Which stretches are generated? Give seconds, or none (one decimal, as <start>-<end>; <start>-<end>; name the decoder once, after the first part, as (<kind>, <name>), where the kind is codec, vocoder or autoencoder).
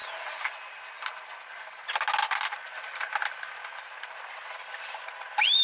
none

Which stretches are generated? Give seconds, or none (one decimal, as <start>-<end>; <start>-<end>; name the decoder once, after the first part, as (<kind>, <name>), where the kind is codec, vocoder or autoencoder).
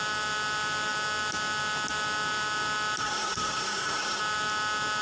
3.0-4.2 (codec, SNAC)